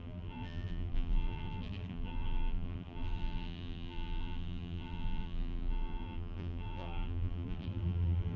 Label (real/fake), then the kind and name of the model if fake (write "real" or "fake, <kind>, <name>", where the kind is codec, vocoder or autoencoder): fake, vocoder, BigVGAN v2